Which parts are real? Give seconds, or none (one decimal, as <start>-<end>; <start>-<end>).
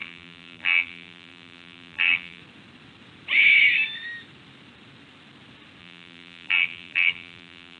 2.4-5.8